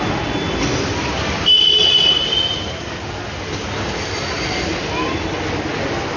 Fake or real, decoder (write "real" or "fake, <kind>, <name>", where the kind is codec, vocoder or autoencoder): real